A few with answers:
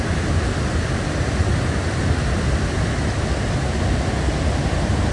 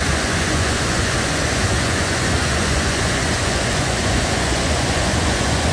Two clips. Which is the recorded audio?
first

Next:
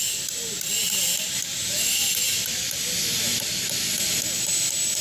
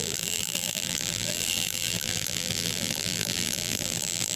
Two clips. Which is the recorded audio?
first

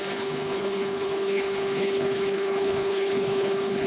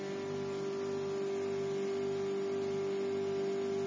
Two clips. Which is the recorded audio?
second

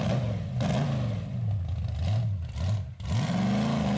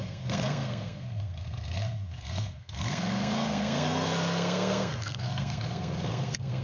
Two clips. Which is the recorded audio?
first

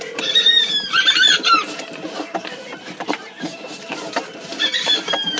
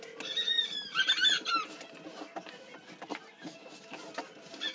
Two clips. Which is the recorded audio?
second